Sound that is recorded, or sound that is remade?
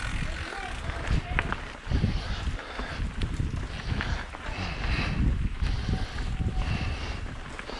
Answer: recorded